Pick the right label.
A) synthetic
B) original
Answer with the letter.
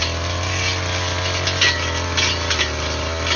B